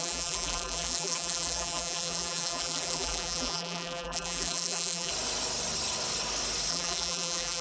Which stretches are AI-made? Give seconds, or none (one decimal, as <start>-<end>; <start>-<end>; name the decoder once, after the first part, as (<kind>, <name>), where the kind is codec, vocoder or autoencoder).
0.0-5.1 (vocoder, BigVGAN v2); 6.7-7.6